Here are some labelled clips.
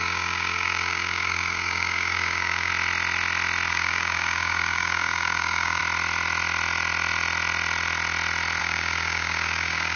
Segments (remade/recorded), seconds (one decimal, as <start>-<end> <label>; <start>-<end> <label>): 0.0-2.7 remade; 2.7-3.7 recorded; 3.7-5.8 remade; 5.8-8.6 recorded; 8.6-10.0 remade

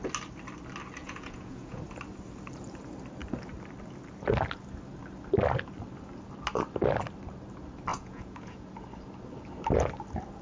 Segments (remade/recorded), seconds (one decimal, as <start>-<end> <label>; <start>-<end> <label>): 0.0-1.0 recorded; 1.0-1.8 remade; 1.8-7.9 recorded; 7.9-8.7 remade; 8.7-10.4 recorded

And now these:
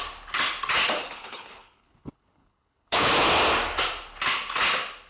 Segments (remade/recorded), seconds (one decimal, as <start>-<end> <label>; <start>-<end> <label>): 0.0-1.0 recorded; 1.0-3.1 remade; 3.1-5.1 recorded

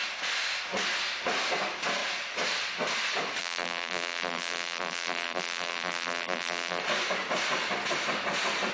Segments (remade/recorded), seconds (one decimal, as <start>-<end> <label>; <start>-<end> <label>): 0.0-3.4 recorded; 3.4-6.8 remade; 6.8-8.7 recorded